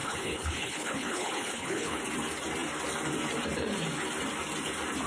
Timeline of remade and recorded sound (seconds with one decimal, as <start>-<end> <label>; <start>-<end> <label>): 0.0-2.0 remade; 2.0-5.1 recorded